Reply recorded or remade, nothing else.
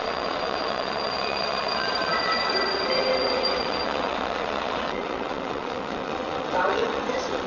remade